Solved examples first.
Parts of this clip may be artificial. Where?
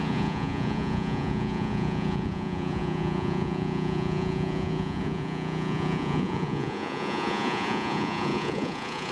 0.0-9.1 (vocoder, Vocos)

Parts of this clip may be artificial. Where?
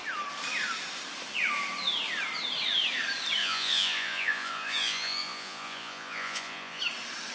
3.4-6.8 (vocoder, Vocos)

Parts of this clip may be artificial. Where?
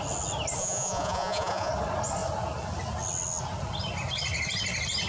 0.6-1.7 (vocoder, Vocos)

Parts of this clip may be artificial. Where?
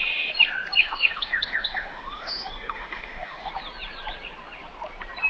0.8-3.5 (autoencoder, DAC-VAE)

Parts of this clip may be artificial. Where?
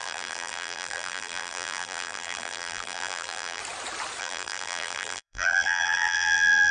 0.0-3.6 (vocoder, BigVGAN v2); 4.2-6.7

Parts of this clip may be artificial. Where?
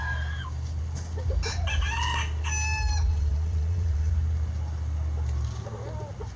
3.1-4.1 (vocoder, WaveNeXt)